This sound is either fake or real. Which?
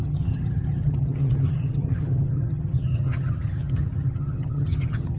fake